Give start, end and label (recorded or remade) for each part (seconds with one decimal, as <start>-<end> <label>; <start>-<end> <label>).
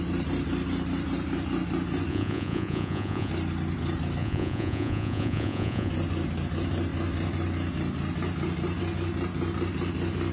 0.0-2.1 recorded; 2.1-3.3 remade; 3.3-4.2 recorded; 4.2-5.9 remade; 5.9-10.3 recorded